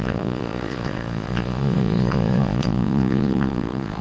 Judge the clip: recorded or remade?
remade